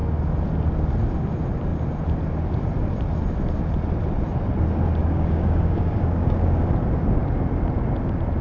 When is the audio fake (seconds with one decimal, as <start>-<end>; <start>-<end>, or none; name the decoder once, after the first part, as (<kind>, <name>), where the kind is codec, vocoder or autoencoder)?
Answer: 5.0-6.7 (codec, DAC)